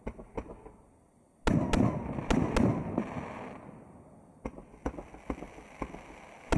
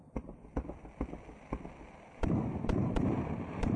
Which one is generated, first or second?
second